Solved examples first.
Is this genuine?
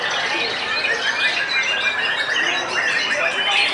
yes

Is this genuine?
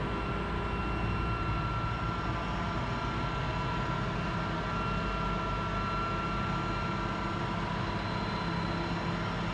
yes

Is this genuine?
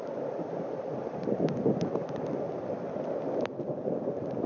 yes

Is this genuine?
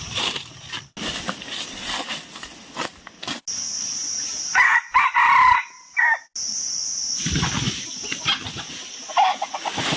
yes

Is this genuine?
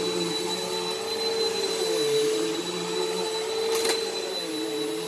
yes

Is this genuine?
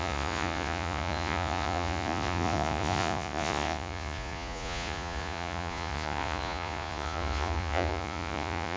no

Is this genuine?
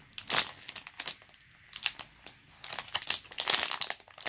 yes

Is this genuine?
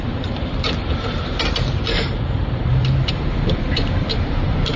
no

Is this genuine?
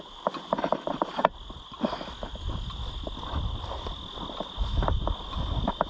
yes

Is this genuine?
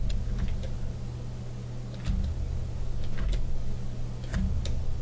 yes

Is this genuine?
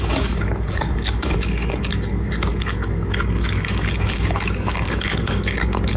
no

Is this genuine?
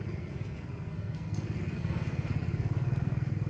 no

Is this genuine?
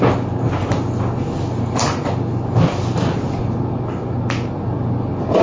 yes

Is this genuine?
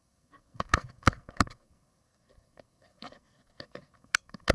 no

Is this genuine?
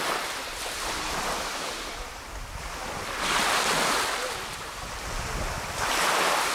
no